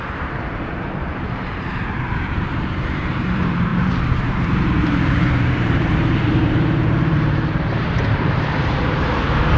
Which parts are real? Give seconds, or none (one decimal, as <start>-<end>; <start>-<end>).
none